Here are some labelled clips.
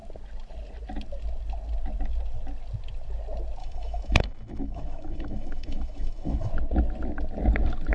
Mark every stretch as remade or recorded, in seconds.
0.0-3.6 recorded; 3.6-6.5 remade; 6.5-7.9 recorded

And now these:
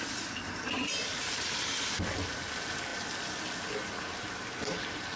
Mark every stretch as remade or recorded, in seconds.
0.0-5.2 recorded

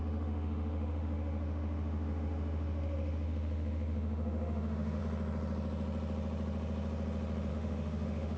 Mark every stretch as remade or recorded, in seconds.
0.0-5.0 remade; 5.0-7.5 recorded; 7.5-8.4 remade